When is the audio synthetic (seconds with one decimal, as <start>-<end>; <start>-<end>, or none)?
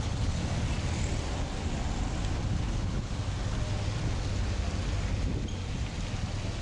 0.0-0.4; 2.7-3.1